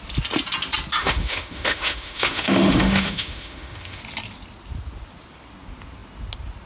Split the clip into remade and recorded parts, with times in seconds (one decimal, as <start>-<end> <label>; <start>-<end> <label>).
0.0-1.0 recorded; 1.0-4.0 remade; 4.0-6.7 recorded